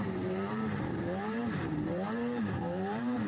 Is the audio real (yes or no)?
no